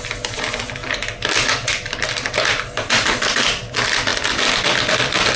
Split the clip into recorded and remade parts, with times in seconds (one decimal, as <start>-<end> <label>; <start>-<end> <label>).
0.0-5.4 recorded